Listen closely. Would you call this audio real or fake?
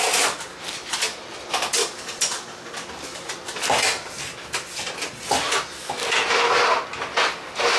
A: real